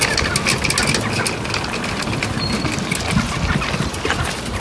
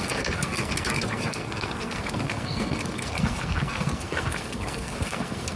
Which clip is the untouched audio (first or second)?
first